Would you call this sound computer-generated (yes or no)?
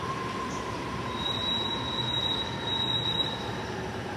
yes